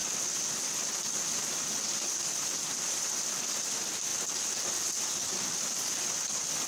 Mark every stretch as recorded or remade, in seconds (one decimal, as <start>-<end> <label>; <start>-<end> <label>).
0.0-6.7 recorded